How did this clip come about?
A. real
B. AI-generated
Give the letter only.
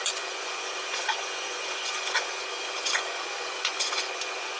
B